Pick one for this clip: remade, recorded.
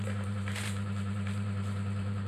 remade